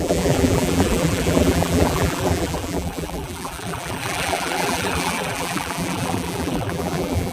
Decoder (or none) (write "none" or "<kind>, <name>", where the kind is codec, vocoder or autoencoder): vocoder, BigVGAN v2